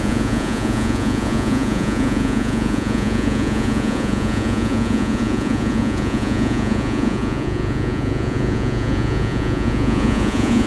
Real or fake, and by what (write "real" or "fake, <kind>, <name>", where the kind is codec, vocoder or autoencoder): fake, vocoder, Vocos